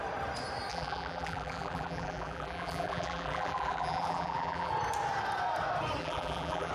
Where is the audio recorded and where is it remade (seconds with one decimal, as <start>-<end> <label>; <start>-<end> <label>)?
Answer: 0.0-0.7 recorded; 0.7-4.7 remade; 4.7-6.0 recorded; 6.0-6.7 remade